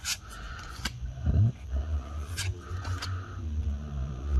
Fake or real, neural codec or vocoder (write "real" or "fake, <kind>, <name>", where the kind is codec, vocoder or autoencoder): fake, vocoder, Vocos